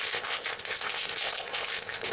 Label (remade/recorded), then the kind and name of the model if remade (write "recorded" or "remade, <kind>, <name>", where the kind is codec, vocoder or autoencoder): remade, codec, ZipCodec